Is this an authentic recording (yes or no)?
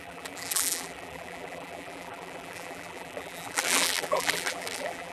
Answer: no